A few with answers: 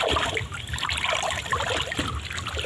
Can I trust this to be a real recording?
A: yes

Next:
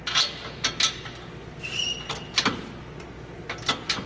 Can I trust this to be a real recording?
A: yes